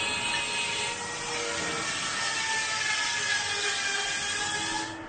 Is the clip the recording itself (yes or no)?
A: yes